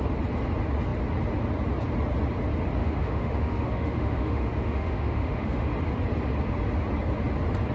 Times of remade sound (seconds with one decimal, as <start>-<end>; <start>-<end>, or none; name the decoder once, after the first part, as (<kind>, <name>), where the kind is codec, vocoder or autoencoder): 2.8-5.7 (autoencoder, DAC-VAE)